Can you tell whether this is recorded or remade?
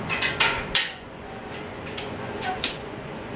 remade